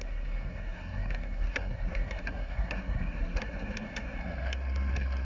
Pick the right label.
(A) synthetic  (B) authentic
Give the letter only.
A